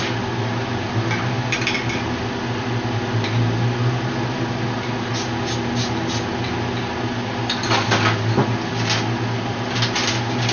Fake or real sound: real